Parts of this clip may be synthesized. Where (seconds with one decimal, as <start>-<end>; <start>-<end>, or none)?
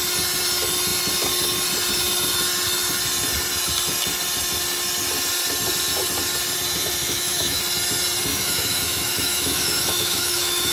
7.0-7.6; 8.3-10.7